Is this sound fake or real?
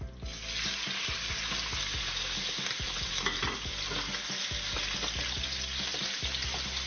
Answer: real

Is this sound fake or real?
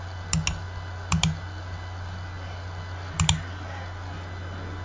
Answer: real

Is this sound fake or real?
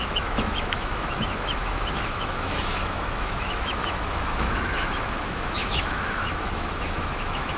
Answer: fake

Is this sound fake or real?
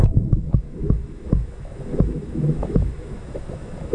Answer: fake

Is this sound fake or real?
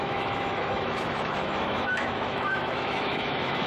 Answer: fake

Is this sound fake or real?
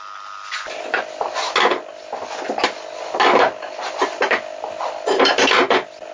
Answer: real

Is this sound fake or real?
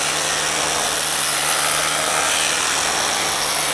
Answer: real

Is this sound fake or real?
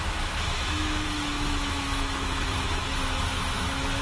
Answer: fake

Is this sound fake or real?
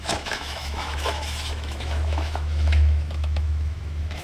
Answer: fake